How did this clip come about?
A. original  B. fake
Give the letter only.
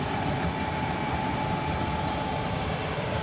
A